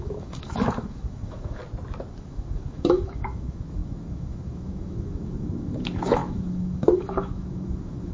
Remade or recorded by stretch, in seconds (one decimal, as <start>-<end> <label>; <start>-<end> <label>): 0.0-1.6 remade; 1.6-2.1 recorded; 2.1-8.1 remade